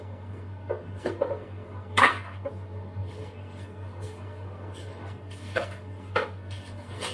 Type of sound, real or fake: fake